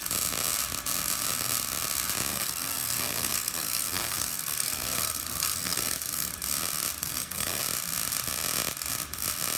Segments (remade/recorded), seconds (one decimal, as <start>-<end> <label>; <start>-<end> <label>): 0.0-2.3 recorded; 2.3-6.3 remade; 6.3-7.0 recorded; 7.0-7.6 remade; 7.6-9.6 recorded